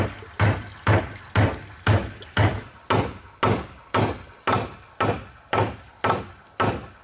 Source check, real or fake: real